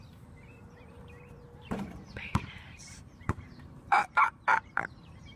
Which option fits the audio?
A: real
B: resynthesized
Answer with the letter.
B